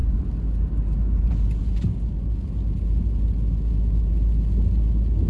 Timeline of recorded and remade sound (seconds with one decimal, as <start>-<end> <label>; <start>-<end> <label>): 0.0-5.3 recorded